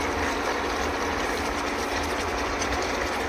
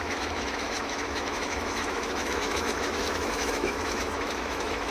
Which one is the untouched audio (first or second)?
first